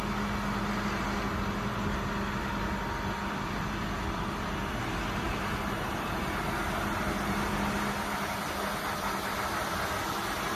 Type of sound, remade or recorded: recorded